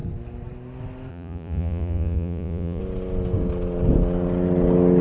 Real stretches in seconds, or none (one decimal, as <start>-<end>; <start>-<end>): 0.0-1.1; 2.8-5.0